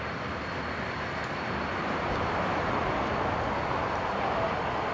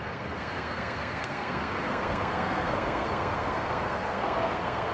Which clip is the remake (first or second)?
second